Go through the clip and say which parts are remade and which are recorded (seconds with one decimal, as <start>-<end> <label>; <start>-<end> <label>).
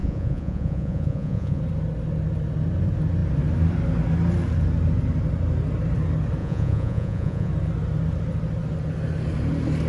0.0-1.6 remade; 1.6-6.4 recorded; 6.4-7.5 remade; 7.5-9.9 recorded